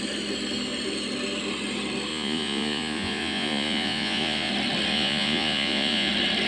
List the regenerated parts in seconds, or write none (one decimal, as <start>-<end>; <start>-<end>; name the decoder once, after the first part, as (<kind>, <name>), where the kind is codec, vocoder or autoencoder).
2.1-4.5 (vocoder, Vocos); 4.9-6.1